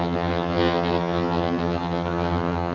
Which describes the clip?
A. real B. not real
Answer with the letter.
B